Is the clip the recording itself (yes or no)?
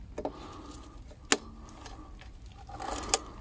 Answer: yes